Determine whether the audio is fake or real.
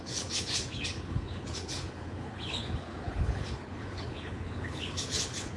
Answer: fake